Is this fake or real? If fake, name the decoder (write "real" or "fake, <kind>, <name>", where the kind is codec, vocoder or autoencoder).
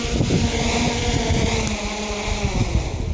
real